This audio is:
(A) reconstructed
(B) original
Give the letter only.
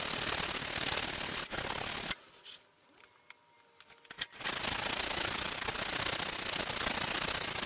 B